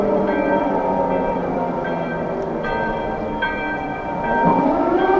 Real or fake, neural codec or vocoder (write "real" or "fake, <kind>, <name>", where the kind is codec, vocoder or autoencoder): fake, vocoder, BigVGAN v2